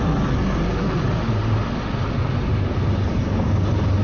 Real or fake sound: real